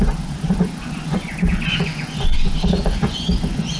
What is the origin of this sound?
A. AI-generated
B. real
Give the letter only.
A